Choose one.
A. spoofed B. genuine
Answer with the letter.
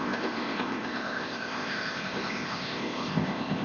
A